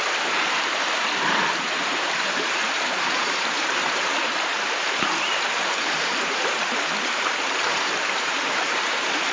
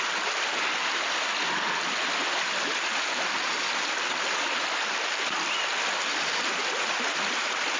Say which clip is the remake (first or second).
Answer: first